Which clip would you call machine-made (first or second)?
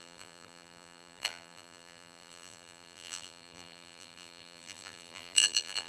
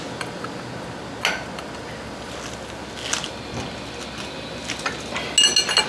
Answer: first